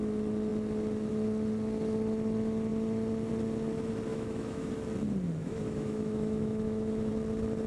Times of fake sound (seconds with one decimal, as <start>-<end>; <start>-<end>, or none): 4.1-4.7; 5.4-7.1